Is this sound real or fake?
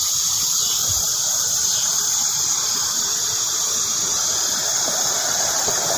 real